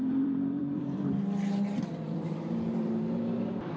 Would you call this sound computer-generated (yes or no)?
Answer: yes